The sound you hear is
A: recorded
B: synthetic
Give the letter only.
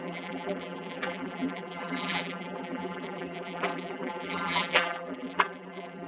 B